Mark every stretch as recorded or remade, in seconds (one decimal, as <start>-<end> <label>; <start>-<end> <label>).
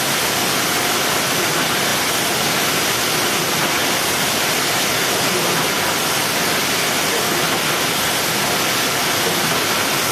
0.0-10.1 recorded